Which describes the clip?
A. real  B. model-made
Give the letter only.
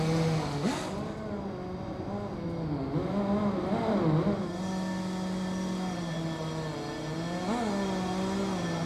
A